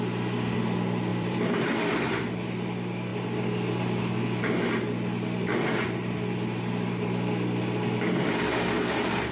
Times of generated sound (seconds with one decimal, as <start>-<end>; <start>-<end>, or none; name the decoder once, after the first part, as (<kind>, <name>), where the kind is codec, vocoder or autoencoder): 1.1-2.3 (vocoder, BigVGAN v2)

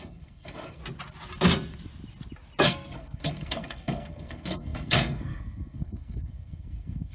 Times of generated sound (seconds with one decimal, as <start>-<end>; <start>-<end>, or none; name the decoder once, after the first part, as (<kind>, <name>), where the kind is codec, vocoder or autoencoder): 0.0-0.8 (codec, SNAC); 2.6-7.1

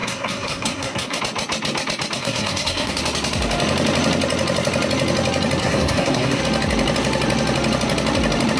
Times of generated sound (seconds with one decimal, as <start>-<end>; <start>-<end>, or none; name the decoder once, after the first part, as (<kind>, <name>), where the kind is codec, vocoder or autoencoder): 0.0-1.2 (codec, SNAC); 2.2-3.0; 5.6-6.4